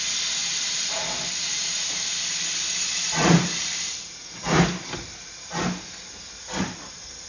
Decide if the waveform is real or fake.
real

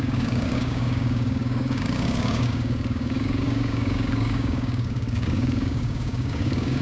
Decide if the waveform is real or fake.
fake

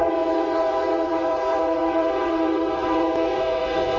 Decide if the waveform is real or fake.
fake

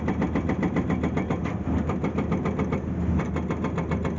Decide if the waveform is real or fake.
real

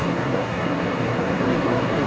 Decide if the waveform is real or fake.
fake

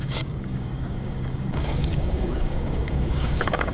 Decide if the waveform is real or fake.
fake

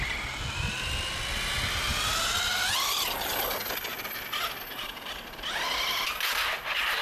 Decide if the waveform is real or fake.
real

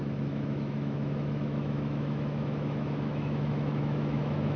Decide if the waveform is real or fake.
fake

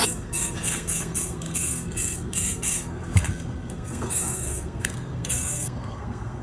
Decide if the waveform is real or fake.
fake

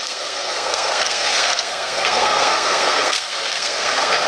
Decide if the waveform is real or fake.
fake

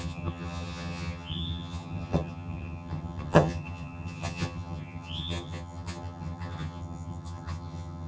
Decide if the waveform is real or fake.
fake